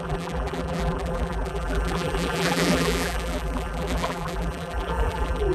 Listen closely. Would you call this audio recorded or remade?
remade